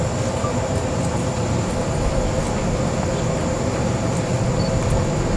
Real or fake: real